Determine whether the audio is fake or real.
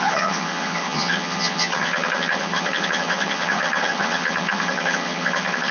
fake